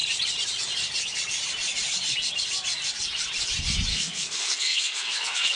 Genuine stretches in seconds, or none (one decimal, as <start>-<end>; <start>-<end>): 0.0-3.9